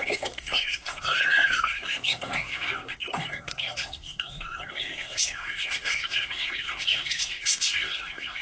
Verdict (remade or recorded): remade